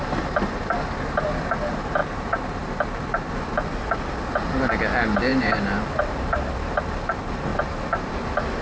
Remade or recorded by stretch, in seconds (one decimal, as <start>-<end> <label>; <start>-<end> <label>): 0.0-2.0 recorded; 2.0-3.3 remade; 3.3-5.3 recorded; 5.3-6.8 remade; 6.8-7.5 recorded; 7.5-8.1 remade; 8.1-8.6 recorded